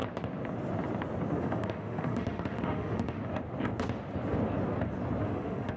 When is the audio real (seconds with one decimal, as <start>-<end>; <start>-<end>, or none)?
0.0-1.4; 3.2-5.2